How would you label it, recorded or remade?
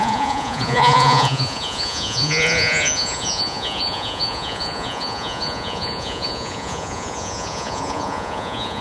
remade